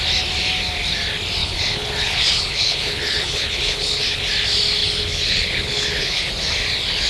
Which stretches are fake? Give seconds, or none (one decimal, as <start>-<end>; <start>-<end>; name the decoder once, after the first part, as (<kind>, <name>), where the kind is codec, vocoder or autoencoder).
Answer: 1.4-4.3 (codec, HILCodec); 4.8-6.3